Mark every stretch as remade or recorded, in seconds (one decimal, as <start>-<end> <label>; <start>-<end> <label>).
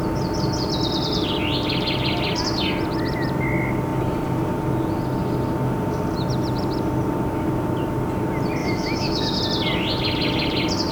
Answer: 0.0-8.6 recorded; 8.6-9.4 remade; 9.4-10.9 recorded